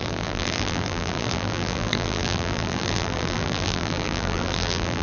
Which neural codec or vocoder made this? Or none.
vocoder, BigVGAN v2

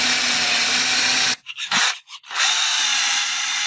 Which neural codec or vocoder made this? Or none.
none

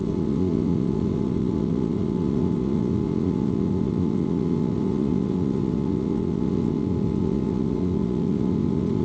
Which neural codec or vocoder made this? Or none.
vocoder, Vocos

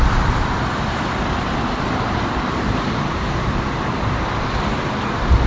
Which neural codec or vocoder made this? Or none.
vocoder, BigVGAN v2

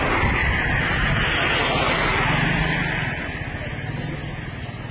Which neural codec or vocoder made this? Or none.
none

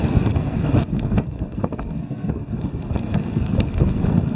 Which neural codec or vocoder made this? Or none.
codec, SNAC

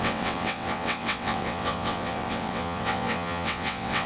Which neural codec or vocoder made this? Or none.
vocoder, WaveNeXt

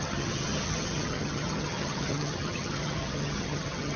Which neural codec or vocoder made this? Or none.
vocoder, HiFi-GAN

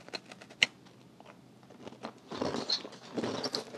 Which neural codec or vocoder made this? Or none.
none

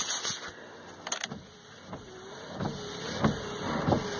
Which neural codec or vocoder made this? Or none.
none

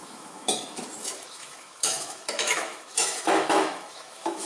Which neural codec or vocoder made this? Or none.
autoencoder, DAC-VAE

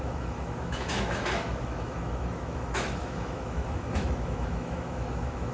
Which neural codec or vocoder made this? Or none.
autoencoder, DAC-VAE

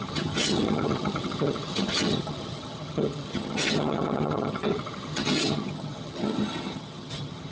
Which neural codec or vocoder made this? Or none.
vocoder, HiFi-GAN